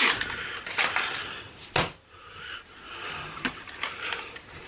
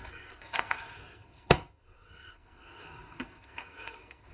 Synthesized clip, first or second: second